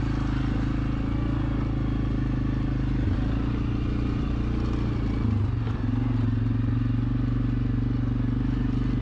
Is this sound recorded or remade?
recorded